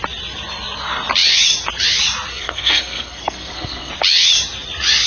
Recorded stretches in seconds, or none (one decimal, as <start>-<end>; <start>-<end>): 0.0-2.3; 3.9-5.1